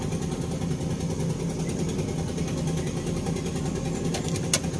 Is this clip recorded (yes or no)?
yes